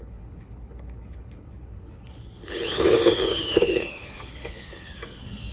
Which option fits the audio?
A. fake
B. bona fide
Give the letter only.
A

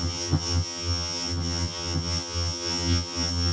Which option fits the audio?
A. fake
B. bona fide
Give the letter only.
A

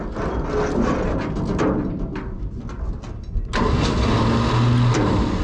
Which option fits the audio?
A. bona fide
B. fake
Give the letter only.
A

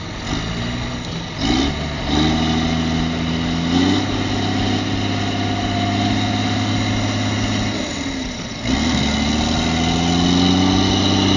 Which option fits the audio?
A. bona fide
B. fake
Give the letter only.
A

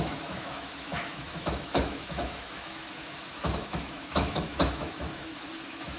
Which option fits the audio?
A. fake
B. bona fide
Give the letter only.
A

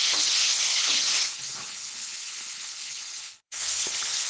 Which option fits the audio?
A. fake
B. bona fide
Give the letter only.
A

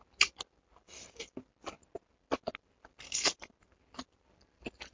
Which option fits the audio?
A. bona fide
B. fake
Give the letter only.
A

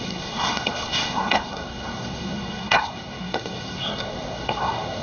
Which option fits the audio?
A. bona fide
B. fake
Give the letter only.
B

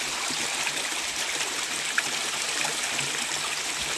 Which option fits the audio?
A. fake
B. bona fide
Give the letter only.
B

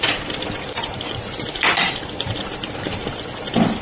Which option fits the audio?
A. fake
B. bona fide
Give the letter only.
A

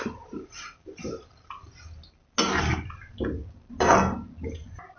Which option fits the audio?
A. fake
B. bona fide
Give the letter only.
B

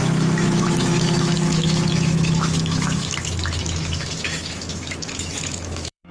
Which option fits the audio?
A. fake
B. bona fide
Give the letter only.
A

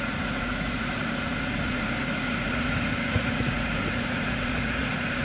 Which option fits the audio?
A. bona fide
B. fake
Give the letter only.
B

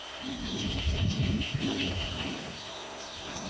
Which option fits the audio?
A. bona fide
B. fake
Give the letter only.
B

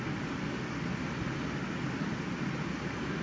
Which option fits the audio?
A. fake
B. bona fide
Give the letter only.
B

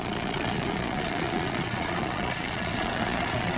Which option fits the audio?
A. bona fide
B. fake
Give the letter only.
B